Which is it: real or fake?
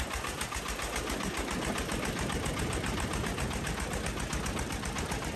real